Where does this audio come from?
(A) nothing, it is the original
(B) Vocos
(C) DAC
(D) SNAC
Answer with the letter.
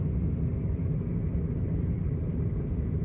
A